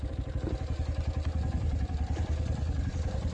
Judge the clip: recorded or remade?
recorded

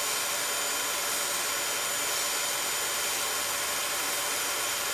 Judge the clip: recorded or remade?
recorded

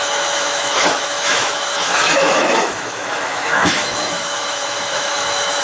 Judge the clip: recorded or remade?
remade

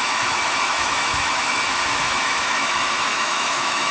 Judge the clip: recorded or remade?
remade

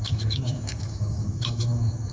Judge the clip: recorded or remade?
remade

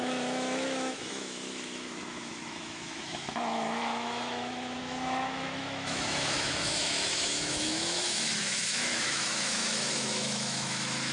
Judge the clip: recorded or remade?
remade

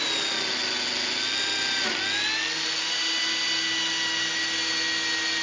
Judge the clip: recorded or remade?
recorded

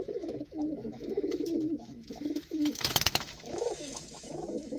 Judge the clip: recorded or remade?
remade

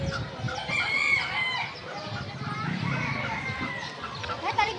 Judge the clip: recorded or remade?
recorded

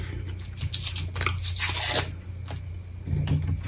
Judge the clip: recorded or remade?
recorded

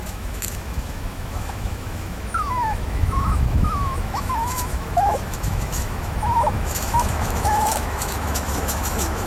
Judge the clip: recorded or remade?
remade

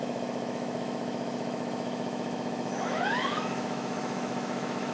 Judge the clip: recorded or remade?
remade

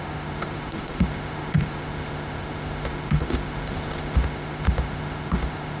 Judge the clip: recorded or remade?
remade